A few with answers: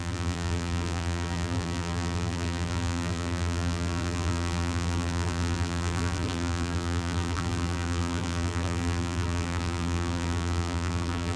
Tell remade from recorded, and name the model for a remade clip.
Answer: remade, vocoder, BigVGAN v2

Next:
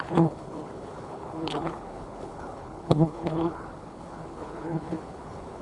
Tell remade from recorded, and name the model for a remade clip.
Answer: remade, codec, HILCodec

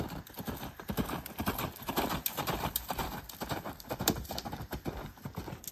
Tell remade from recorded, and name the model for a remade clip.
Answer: recorded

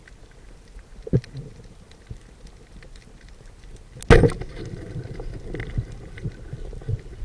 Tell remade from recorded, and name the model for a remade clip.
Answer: recorded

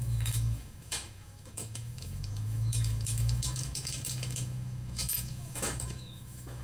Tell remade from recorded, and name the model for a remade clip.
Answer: remade, autoencoder, DAC-VAE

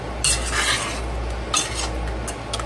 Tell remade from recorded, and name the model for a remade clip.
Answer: recorded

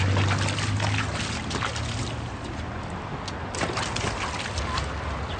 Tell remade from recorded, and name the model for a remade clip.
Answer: recorded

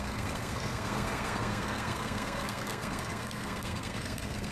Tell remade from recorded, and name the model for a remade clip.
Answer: remade, codec, SNAC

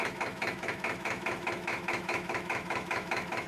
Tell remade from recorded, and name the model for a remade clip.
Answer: remade, autoencoder, DAC-VAE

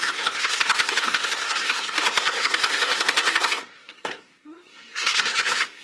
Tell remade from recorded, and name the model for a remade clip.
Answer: remade, codec, SNAC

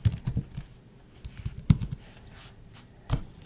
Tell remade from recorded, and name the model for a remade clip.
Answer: recorded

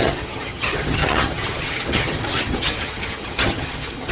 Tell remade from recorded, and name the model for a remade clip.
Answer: remade, vocoder, HiFi-GAN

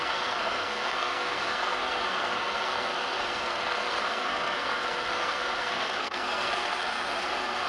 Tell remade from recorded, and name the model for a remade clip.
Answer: remade, codec, SNAC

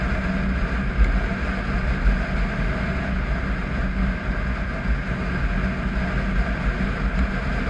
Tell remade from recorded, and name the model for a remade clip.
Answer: recorded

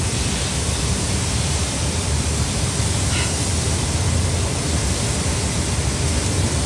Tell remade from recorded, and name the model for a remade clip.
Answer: remade, vocoder, BigVGAN v2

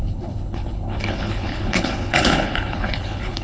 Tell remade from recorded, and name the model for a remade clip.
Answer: remade, codec, HILCodec